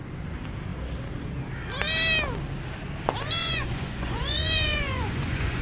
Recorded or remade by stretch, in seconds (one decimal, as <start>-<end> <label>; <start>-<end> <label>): 0.0-3.4 recorded; 3.4-5.6 remade